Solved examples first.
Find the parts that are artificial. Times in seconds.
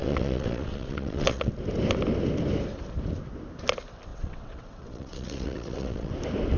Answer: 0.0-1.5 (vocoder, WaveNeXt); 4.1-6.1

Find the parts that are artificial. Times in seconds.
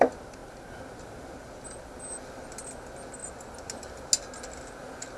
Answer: none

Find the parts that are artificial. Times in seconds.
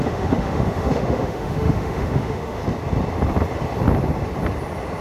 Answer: 0.0-2.6 (autoencoder, DAC-VAE)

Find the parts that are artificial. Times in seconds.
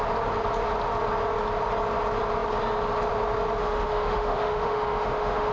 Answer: 3.6-5.5 (autoencoder, DAC-VAE)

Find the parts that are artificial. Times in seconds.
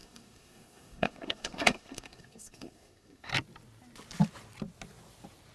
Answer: 0.0-3.3 (codec, SNAC)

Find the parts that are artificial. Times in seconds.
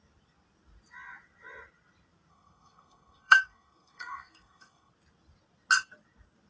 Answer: 2.3-4.9 (codec, SNAC)